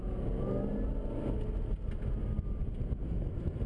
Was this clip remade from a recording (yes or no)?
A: no